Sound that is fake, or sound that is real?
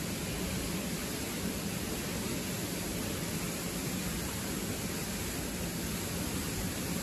real